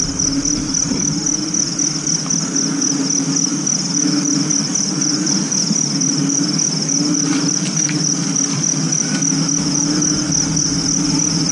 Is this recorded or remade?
remade